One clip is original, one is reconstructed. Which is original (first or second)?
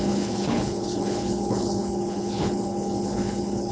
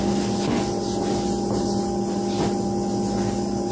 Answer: second